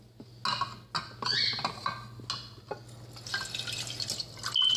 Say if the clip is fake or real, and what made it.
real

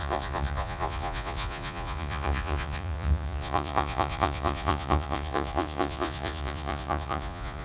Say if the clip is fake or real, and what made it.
fake, vocoder, Vocos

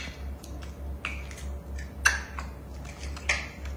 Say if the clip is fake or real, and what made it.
real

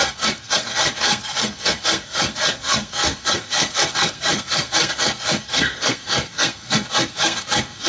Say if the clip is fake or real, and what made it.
fake, codec, SNAC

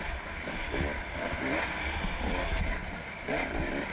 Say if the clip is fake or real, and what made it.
real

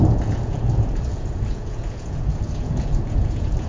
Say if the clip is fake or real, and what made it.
fake, vocoder, Vocos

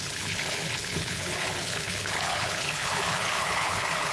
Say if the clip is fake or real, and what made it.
fake, codec, HILCodec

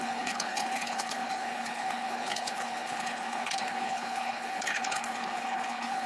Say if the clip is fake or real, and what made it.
fake, codec, HILCodec